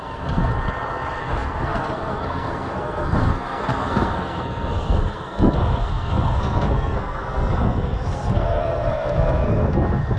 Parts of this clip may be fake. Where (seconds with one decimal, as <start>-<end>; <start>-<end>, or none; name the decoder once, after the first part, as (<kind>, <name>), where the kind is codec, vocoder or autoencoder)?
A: 0.0-0.5 (codec, SNAC); 1.2-10.2